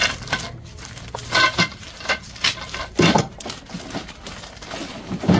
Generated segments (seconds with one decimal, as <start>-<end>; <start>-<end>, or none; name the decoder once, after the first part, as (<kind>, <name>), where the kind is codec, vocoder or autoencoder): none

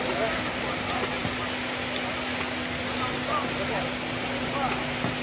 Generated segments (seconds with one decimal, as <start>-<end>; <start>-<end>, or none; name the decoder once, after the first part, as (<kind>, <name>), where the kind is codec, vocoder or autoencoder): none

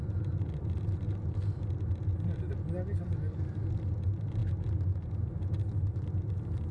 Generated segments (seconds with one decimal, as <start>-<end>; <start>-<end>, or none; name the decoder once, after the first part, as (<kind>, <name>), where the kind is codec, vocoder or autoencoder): none